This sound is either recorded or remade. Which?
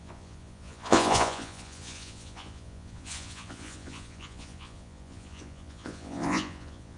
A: remade